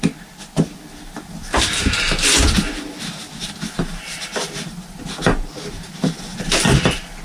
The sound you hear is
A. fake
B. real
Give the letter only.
B